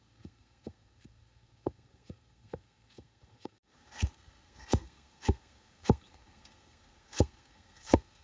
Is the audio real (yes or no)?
no